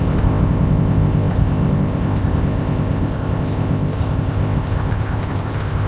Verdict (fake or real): fake